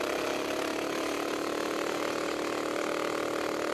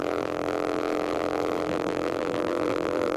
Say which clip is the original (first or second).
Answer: first